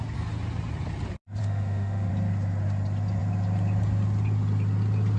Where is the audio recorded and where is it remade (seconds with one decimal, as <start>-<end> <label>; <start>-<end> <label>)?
0.0-1.4 recorded; 1.4-2.1 remade; 2.1-5.2 recorded